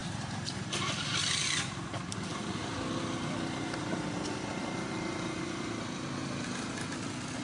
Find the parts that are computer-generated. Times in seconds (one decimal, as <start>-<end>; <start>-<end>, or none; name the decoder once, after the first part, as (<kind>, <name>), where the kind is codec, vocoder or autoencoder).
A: 0.0-0.7 (vocoder, BigVGAN v2); 1.4-1.9